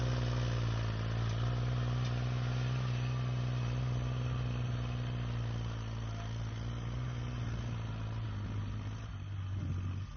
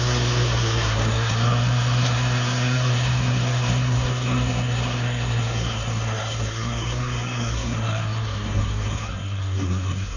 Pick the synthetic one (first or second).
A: second